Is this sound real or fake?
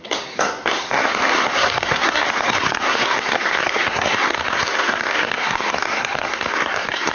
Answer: fake